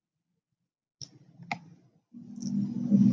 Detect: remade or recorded recorded